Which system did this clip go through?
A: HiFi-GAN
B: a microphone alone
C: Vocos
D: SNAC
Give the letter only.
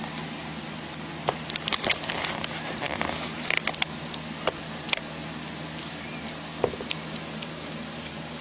B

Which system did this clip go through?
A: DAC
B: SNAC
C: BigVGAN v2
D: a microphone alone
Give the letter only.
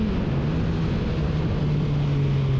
D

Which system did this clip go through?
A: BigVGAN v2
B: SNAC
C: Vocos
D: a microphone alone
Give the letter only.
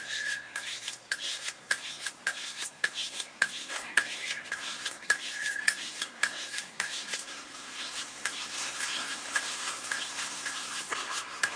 B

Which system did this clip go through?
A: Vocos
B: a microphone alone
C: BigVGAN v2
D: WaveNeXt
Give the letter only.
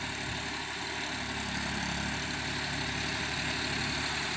B